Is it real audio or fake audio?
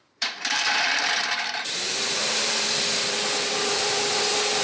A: fake